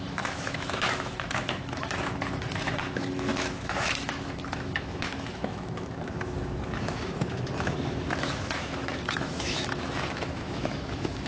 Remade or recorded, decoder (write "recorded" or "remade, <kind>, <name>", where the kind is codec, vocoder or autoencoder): remade, autoencoder, DAC-VAE